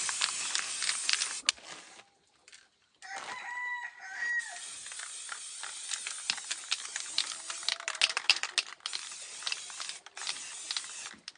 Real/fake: real